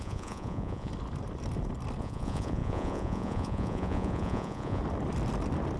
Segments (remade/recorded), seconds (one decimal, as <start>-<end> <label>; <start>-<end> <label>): 0.0-0.9 remade; 0.9-2.0 recorded; 2.0-4.8 remade; 4.8-5.8 recorded